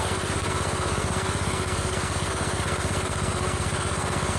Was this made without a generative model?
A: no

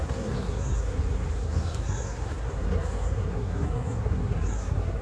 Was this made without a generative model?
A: no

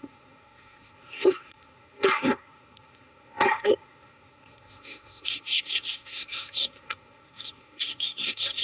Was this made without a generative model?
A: no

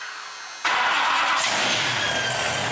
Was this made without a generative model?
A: yes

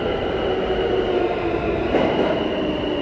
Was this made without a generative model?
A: yes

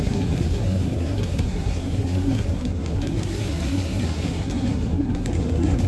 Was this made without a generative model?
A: no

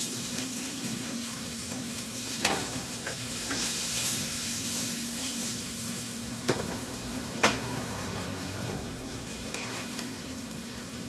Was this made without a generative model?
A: no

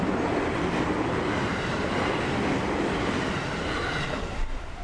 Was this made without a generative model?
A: yes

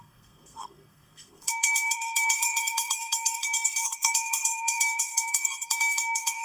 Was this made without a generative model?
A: no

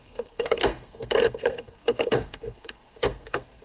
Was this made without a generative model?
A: no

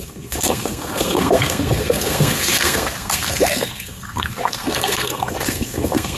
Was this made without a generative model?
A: no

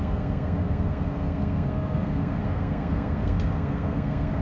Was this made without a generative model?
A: no